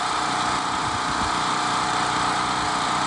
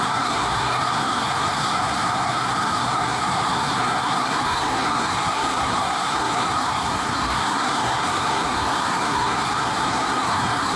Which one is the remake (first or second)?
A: second